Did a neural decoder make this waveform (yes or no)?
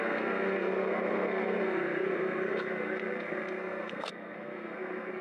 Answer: yes